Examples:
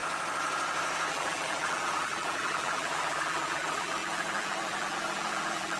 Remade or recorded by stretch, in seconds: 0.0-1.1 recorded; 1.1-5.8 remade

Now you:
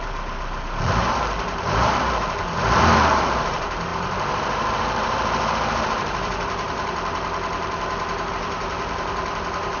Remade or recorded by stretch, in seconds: 0.0-9.8 remade

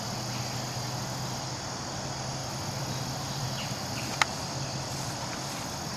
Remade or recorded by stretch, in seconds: 0.0-2.4 recorded; 2.4-4.9 remade; 4.9-6.0 recorded

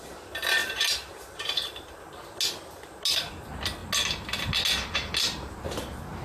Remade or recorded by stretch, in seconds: 0.0-0.6 recorded; 0.6-1.1 remade; 1.1-6.2 recorded

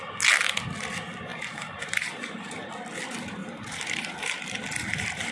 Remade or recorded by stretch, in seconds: 0.0-1.3 recorded; 1.3-2.7 remade; 2.7-3.4 recorded; 3.4-5.3 remade

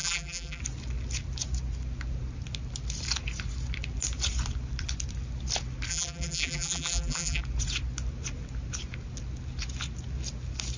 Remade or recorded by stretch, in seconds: 0.0-0.6 remade; 0.6-5.9 recorded; 5.9-7.4 remade; 7.4-10.8 recorded

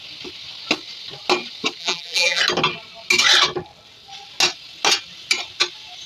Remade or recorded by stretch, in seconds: 0.0-1.8 recorded; 1.8-2.4 remade; 2.4-6.1 recorded

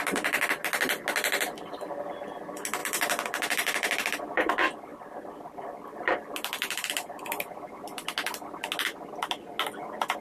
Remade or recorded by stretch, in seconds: 0.0-2.8 recorded; 2.8-4.5 remade; 4.5-4.9 recorded; 4.9-6.9 remade; 6.9-10.2 recorded